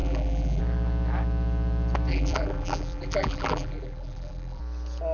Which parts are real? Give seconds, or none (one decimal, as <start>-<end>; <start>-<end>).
0.6-2.1; 4.6-5.1